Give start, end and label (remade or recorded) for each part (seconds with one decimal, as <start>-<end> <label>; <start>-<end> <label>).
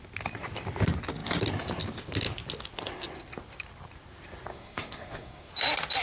0.0-4.5 recorded; 4.5-5.5 remade; 5.5-6.0 recorded